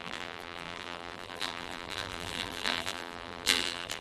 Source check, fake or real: fake